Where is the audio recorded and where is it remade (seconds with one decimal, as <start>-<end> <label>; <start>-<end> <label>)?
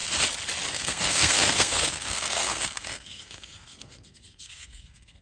0.0-0.7 recorded; 0.7-5.2 remade